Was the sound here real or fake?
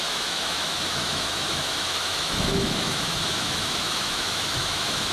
fake